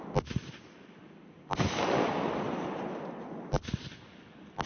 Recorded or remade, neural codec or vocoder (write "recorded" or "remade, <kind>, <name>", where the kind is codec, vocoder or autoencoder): recorded